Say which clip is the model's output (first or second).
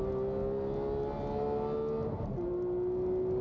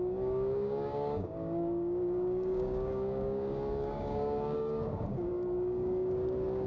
second